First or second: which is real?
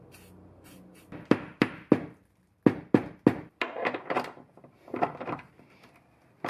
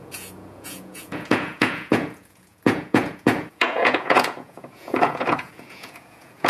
first